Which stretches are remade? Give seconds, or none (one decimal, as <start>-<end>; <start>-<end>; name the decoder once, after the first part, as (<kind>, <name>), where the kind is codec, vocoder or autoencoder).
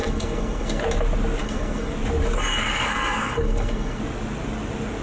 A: 0.0-0.8 (codec, SNAC); 1.4-1.9; 2.5-4.0